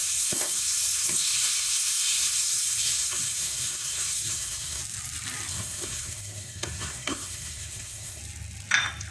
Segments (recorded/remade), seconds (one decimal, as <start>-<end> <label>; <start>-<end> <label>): 0.0-4.8 remade; 4.8-5.5 recorded; 5.5-8.2 remade; 8.2-9.1 recorded